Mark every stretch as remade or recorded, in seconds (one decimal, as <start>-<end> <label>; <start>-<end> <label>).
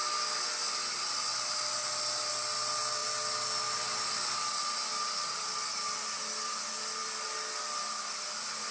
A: 0.0-7.0 recorded; 7.0-8.2 remade; 8.2-8.7 recorded